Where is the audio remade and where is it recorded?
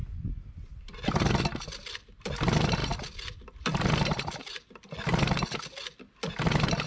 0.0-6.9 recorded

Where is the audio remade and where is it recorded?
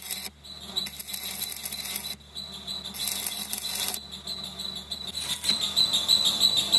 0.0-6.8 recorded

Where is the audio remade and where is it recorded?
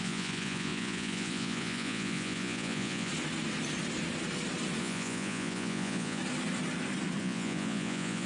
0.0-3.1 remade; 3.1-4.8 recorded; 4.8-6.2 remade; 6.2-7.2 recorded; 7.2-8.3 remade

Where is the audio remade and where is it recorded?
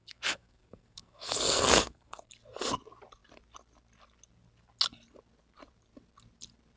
0.0-2.3 remade; 2.3-6.8 recorded